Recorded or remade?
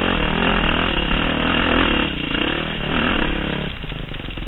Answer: recorded